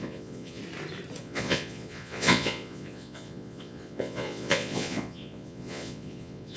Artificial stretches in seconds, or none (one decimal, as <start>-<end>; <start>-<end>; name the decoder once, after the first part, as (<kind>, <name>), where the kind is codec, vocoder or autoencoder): 0.0-0.6 (vocoder, Vocos); 1.2-6.6